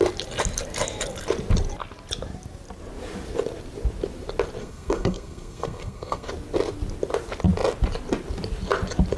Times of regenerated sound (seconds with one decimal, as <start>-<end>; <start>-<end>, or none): 4.6-6.3